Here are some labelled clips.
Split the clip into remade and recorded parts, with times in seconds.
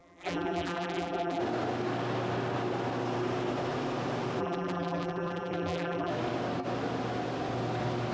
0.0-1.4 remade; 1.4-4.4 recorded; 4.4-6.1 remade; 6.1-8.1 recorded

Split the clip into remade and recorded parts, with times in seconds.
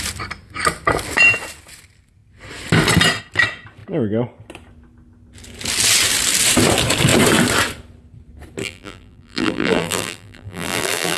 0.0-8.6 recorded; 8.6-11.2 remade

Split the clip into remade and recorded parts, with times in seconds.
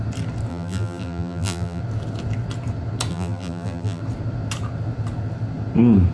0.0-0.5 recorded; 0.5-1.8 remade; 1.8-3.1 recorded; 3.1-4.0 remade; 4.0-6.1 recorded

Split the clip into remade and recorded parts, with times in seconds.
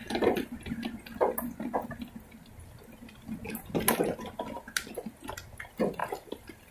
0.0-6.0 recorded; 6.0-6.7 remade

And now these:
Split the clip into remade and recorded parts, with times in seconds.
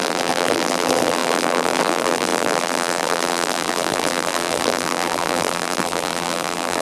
0.0-6.8 remade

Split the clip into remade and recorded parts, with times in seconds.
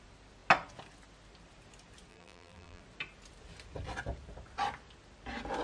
0.0-2.1 recorded; 2.1-2.8 remade; 2.8-5.6 recorded